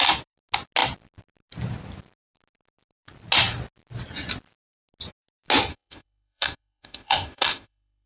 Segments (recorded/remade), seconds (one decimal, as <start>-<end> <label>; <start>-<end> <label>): 0.0-5.7 recorded; 5.7-8.1 remade